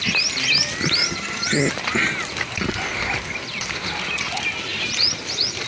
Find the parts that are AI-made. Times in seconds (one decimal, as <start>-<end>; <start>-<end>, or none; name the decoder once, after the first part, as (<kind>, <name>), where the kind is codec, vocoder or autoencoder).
1.0-1.7 (vocoder, HiFi-GAN)